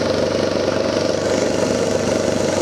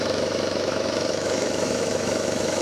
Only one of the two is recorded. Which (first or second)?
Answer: first